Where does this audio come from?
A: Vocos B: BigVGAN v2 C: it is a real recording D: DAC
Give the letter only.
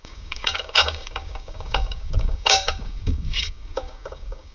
D